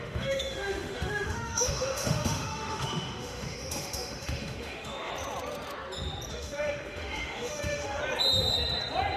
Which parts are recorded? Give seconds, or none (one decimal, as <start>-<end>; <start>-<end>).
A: 5.1-6.3; 8.0-9.2